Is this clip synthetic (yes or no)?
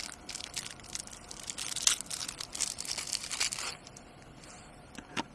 no